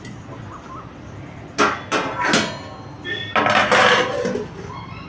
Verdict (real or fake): real